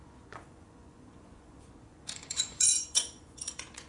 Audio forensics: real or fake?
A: fake